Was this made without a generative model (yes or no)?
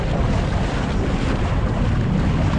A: yes